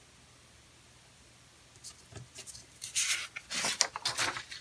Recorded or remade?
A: recorded